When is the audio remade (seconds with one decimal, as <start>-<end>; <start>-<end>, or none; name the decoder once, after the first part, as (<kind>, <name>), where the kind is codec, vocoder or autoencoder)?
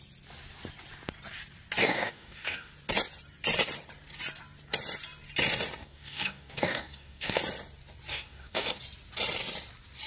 1.8-2.7 (codec, DAC); 5.8-7.4; 8.1-8.8